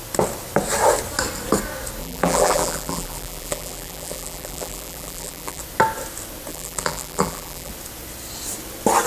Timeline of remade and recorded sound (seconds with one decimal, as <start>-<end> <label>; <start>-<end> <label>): 0.0-2.0 recorded; 2.0-5.6 remade; 5.6-6.5 recorded; 6.5-7.7 remade; 7.7-9.1 recorded